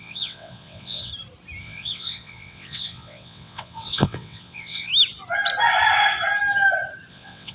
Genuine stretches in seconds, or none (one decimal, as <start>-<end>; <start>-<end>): 1.1-1.6; 4.9-7.1